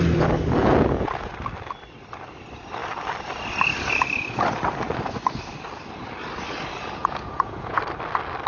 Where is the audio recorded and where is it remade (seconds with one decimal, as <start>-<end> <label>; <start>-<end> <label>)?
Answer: 0.0-0.6 recorded; 0.6-1.3 remade; 1.3-6.8 recorded; 6.8-7.8 remade; 7.8-8.5 recorded